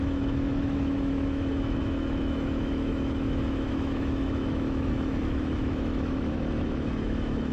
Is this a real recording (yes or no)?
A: no